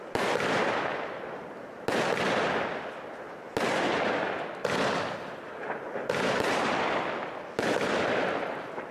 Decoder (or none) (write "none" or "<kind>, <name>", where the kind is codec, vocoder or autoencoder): none